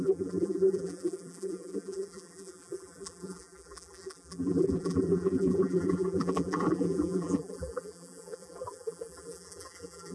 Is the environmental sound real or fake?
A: fake